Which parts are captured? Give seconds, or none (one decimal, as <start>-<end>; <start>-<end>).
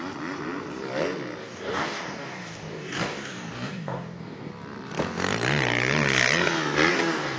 0.0-1.4; 4.5-6.9